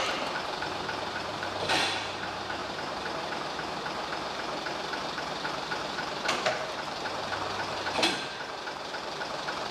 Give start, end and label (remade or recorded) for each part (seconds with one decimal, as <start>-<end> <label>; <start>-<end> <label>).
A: 0.0-2.6 remade; 2.6-5.0 recorded; 5.0-9.7 remade